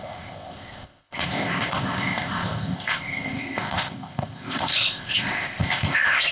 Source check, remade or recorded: remade